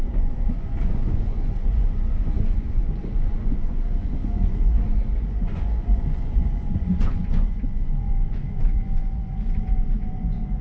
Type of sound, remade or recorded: remade